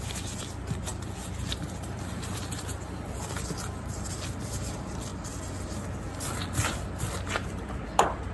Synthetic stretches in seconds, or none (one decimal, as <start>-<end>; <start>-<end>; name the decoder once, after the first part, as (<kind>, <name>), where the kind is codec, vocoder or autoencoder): none